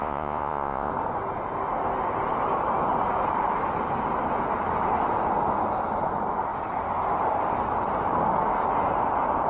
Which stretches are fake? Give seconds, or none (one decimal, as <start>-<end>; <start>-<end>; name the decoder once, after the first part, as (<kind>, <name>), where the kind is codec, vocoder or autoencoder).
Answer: 0.0-0.9 (vocoder, Vocos)